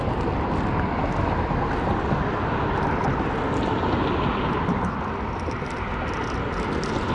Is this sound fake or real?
real